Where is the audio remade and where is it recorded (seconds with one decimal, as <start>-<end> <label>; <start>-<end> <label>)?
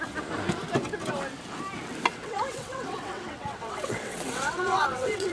0.0-2.1 recorded; 2.1-5.3 remade